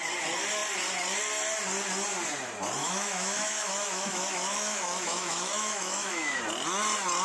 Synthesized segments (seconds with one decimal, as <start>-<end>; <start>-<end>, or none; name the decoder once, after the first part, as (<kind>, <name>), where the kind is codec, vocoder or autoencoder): 2.8-6.4 (autoencoder, DAC-VAE)